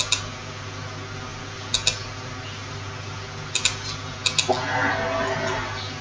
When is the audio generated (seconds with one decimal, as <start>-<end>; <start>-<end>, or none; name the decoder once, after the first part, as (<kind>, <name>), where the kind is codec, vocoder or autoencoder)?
none